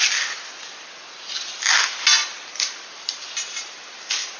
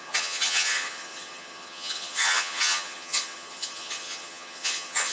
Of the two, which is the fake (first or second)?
second